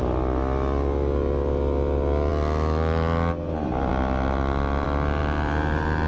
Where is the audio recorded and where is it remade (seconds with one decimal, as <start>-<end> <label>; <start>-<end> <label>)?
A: 0.0-6.1 recorded